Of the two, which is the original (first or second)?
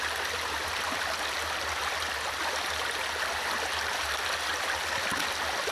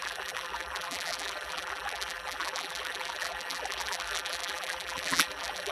first